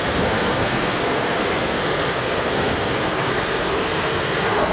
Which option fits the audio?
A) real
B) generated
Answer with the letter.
B